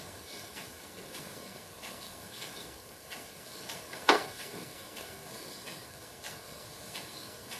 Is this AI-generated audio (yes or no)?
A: yes